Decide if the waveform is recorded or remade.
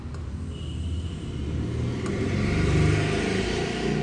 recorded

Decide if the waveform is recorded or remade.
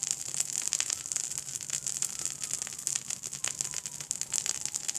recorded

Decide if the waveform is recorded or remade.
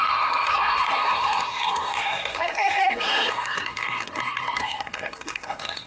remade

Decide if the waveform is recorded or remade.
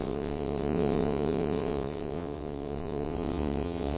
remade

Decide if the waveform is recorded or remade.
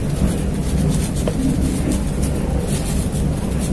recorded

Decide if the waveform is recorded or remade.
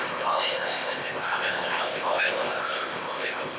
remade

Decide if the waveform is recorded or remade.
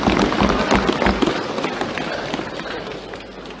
recorded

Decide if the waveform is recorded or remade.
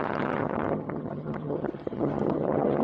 remade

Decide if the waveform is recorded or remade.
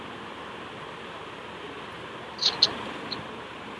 recorded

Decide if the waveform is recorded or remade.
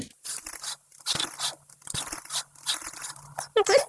recorded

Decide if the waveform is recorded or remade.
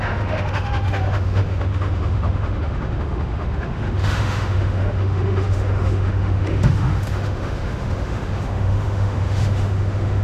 remade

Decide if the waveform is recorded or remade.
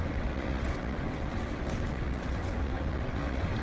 remade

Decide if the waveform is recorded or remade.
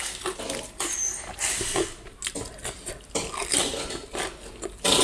recorded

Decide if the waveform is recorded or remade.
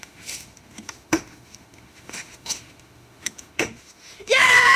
remade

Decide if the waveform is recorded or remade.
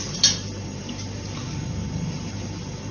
recorded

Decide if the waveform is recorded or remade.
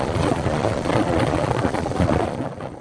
remade